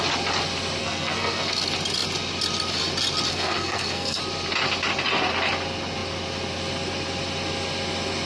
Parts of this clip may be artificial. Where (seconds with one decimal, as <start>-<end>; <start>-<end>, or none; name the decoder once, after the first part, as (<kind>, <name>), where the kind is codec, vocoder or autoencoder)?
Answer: 0.8-1.5 (codec, SNAC); 3.3-4.2